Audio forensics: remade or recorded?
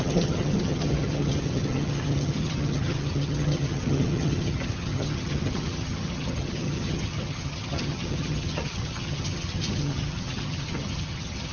remade